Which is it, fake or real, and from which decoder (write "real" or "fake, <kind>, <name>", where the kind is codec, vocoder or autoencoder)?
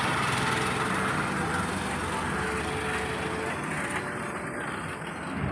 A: real